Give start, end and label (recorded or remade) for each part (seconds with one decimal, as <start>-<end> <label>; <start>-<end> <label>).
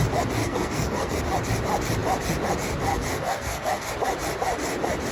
0.0-0.4 recorded; 0.4-1.2 remade; 1.2-2.9 recorded; 2.9-3.9 remade; 3.9-5.1 recorded